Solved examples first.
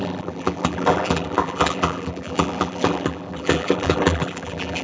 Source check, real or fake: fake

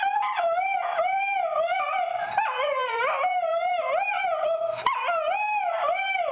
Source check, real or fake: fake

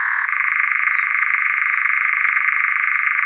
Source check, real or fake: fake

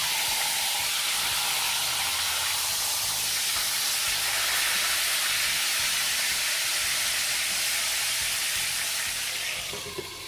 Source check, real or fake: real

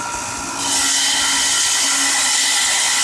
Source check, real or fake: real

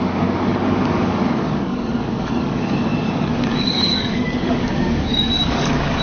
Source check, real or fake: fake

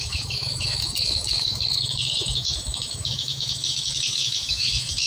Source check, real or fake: fake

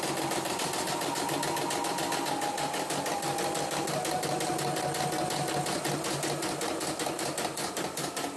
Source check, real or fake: real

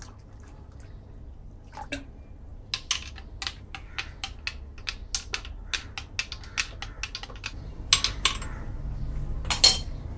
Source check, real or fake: real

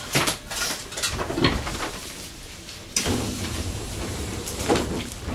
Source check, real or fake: fake